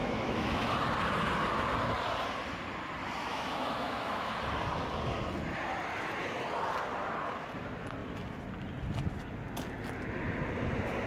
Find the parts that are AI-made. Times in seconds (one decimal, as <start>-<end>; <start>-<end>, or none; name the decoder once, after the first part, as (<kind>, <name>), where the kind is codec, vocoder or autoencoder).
0.0-0.7 (autoencoder, DAC-VAE); 3.3-4.3